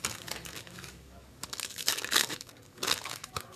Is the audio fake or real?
fake